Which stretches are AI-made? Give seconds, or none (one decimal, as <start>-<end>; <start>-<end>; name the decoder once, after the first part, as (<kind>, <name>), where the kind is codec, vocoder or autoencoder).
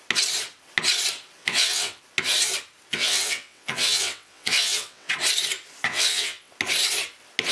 1.4-2.0 (vocoder, WaveNeXt); 2.9-5.1; 5.9-6.5